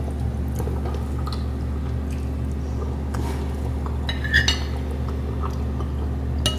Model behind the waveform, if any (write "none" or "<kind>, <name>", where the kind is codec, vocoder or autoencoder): none